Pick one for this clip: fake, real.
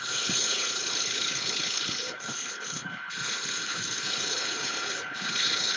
fake